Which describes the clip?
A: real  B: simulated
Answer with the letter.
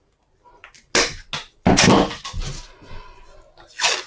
A